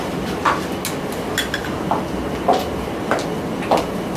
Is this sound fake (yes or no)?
no